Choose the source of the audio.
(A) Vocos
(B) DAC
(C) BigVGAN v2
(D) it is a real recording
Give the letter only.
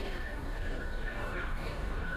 B